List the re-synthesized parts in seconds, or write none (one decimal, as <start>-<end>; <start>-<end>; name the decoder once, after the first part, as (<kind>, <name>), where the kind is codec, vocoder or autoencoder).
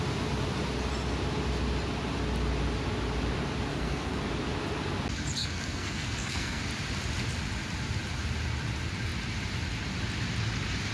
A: 3.7-4.2 (codec, SNAC); 5.4-6.6